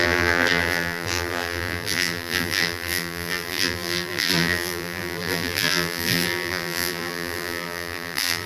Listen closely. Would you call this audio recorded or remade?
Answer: remade